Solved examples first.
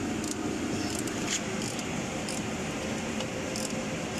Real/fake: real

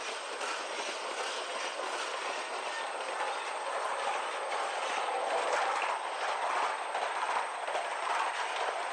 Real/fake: real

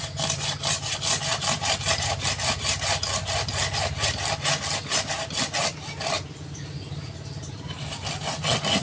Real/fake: real